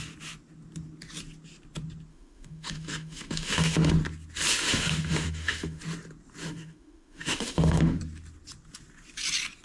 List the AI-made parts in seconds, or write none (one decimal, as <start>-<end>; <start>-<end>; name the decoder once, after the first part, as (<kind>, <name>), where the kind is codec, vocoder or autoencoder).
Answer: 2.1-3.9 (autoencoder, DAC-VAE); 4.5-5.8; 6.4-8.0